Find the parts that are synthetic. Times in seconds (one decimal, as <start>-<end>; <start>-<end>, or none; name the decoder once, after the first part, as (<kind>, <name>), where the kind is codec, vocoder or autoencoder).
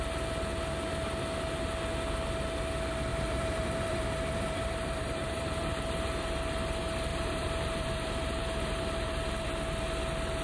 3.1-5.8 (vocoder, BigVGAN v2); 7.1-9.5